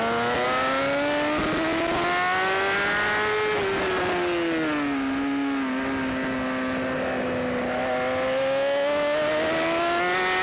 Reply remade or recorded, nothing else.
recorded